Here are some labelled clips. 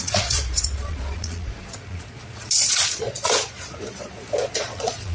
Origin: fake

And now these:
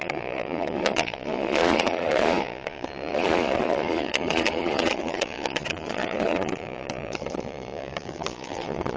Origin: fake